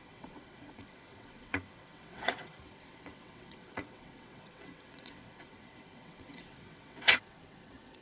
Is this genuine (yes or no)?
no